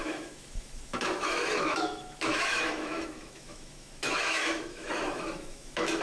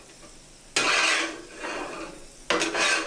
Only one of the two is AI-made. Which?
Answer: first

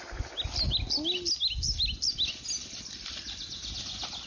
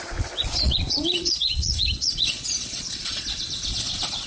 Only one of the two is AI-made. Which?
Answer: second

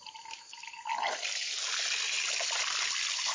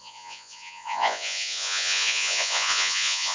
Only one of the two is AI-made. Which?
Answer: second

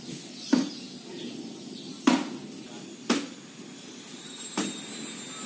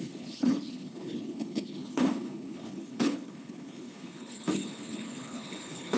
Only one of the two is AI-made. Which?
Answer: second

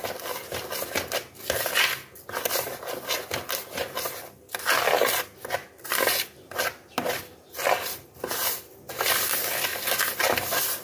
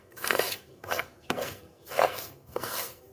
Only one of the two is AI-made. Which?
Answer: second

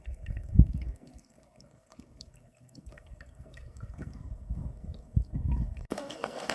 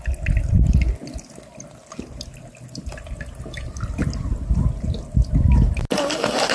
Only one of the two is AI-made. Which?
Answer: first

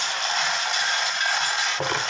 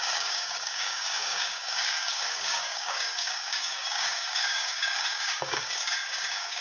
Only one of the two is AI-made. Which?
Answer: second